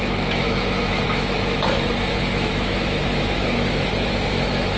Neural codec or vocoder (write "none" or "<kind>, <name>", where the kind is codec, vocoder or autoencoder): autoencoder, DAC-VAE